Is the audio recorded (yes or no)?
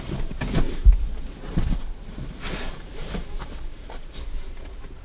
yes